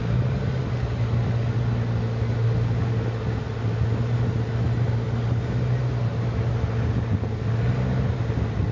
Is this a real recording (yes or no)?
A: yes